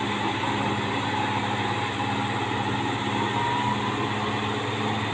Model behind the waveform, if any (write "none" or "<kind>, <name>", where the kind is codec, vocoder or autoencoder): none